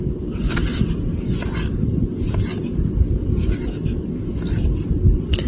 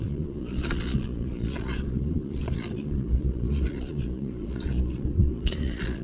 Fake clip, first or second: second